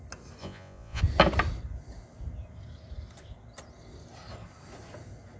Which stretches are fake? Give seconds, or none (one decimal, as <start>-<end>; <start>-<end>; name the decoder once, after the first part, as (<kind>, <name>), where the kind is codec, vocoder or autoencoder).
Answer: 0.4-1.0 (vocoder, Vocos)

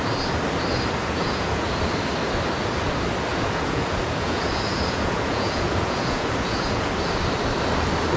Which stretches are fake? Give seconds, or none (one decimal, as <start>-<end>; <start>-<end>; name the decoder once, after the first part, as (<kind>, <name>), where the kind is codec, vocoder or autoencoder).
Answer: 1.0-1.8 (vocoder, Vocos); 3.3-6.9

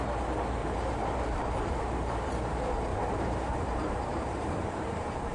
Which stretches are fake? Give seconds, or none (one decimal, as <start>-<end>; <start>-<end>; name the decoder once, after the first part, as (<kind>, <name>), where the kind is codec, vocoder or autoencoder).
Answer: 0.6-2.3 (vocoder, BigVGAN v2); 2.9-3.6; 4.1-5.3

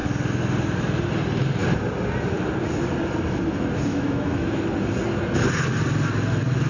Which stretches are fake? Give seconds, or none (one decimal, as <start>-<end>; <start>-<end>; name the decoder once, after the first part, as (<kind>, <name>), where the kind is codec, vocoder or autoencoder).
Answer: 3.9-4.6 (autoencoder, DAC-VAE)

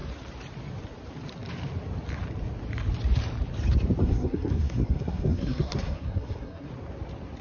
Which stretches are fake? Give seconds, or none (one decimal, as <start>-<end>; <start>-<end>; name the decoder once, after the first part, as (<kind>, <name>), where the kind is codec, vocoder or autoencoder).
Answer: 4.0-6.7 (codec, SNAC)